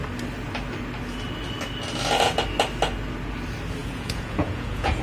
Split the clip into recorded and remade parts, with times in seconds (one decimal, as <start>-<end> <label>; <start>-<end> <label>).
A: 0.0-3.8 recorded; 3.8-5.0 remade